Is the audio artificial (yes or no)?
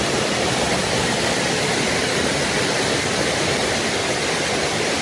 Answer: yes